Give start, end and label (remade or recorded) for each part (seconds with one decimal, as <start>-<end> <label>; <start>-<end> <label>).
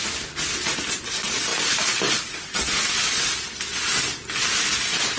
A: 0.0-5.2 recorded